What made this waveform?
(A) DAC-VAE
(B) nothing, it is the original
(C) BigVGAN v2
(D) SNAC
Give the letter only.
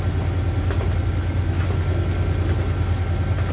B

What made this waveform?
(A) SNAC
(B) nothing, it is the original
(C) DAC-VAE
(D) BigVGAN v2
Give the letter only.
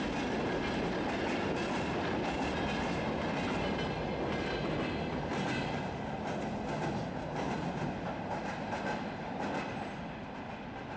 B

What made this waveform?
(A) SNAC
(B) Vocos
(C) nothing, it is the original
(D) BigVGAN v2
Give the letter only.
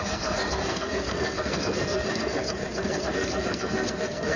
A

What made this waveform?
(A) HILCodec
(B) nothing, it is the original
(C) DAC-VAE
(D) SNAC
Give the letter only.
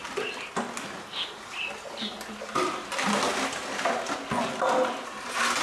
B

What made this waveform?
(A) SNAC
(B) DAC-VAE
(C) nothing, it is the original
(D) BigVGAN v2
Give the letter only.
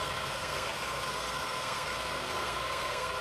A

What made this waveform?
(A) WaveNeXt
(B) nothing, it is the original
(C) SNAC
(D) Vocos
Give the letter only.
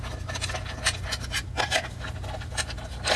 B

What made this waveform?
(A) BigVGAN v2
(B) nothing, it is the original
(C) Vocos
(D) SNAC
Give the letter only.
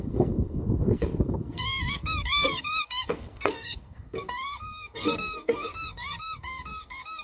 D